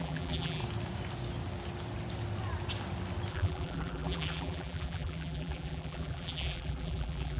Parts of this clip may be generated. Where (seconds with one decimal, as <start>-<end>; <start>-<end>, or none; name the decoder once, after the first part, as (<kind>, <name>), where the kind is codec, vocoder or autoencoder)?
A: 0.0-0.6 (vocoder, BigVGAN v2); 3.3-7.4